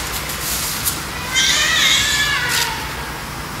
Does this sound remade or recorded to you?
recorded